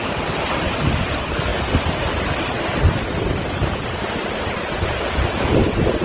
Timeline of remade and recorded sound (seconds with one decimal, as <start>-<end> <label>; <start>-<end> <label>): 0.0-6.0 recorded